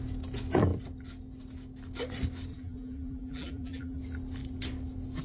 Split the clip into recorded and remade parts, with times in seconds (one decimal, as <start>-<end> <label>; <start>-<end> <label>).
0.0-2.5 recorded; 2.5-4.0 remade; 4.0-5.2 recorded